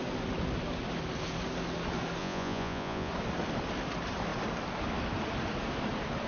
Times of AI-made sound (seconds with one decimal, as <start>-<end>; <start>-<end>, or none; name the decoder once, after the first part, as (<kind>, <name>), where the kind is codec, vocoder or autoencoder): 2.2-3.1 (vocoder, Vocos)